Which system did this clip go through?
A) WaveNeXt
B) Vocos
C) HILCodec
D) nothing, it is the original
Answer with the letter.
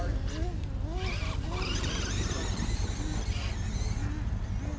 D